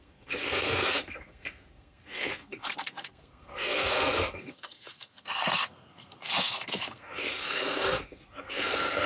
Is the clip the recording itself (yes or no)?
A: no